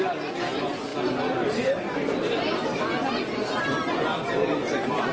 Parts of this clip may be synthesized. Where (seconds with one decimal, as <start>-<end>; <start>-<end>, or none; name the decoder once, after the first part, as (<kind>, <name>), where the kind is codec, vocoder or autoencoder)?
none